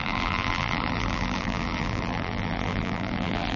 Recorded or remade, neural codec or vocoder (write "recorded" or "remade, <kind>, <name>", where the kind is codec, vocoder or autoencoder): remade, vocoder, BigVGAN v2